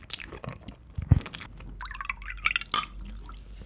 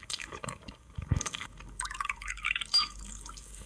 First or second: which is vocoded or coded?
second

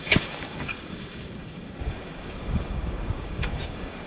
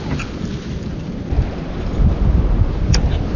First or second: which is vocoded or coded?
first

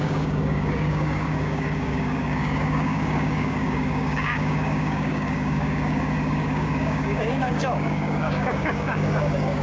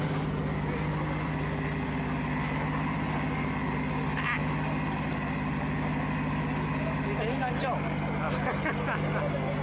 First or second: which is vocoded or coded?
first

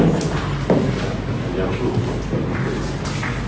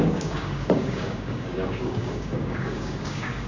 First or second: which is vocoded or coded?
second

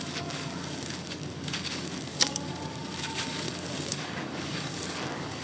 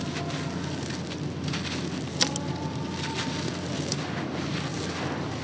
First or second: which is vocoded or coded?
first